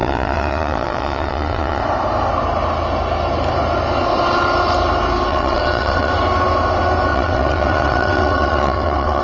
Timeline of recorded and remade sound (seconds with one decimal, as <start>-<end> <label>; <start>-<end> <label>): 0.0-1.8 remade; 1.8-5.3 recorded; 5.3-6.1 remade; 6.1-7.1 recorded; 7.1-9.2 remade